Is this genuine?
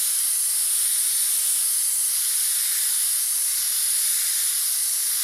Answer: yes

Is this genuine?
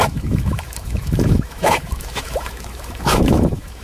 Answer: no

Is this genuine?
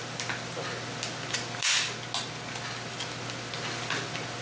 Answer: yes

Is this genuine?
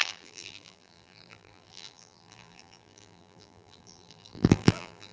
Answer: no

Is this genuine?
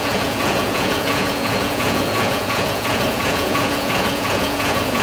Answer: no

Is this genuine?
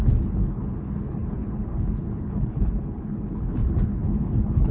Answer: no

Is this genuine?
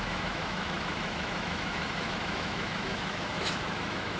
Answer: no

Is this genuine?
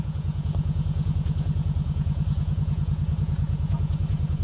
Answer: no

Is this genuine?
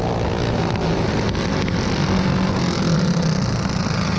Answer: yes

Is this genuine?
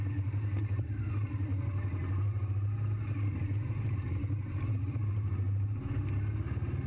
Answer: yes